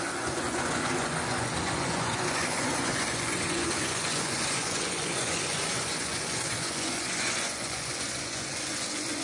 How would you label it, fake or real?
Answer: fake